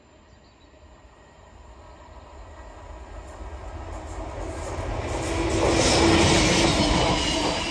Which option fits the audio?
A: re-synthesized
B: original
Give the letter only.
B